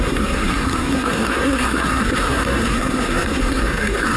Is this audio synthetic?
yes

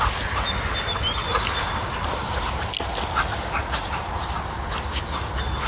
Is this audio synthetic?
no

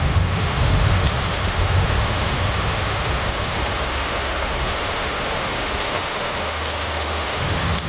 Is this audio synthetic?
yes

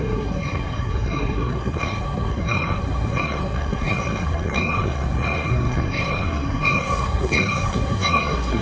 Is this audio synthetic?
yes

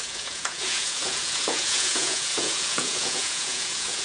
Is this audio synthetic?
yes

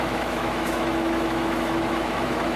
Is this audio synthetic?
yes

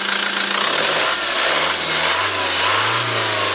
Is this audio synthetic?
no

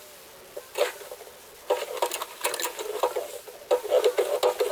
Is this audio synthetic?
no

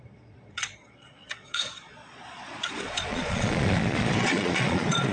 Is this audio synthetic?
yes